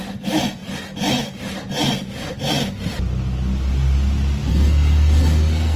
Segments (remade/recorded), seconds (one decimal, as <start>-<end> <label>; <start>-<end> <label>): 0.0-4.5 recorded; 4.5-5.8 remade